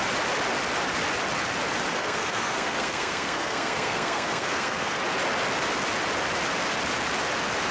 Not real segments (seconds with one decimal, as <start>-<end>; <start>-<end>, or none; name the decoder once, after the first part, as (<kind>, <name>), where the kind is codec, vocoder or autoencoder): 1.9-5.0 (codec, SNAC)